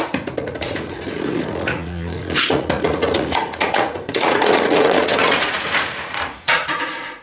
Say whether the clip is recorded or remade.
remade